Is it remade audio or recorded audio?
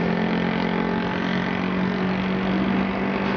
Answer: recorded